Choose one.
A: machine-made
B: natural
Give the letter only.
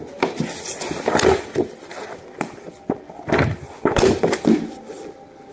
B